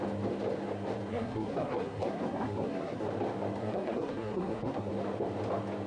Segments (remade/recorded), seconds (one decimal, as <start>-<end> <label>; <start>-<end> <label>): 0.0-1.1 recorded; 1.1-3.1 remade; 3.1-3.6 recorded; 3.6-4.9 remade; 4.9-5.9 recorded